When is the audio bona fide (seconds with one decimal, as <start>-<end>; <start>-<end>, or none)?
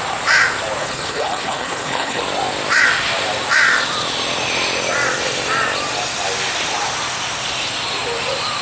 0.0-0.8; 2.2-8.6